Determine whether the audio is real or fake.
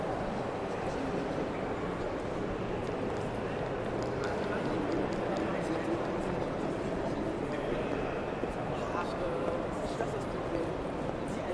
fake